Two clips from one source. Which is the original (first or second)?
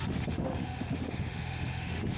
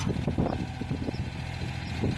second